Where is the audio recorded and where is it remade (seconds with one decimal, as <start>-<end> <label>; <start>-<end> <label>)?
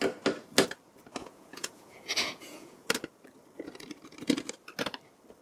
0.0-1.2 recorded; 1.2-2.9 remade; 2.9-5.4 recorded